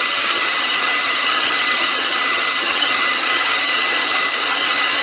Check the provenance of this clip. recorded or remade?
remade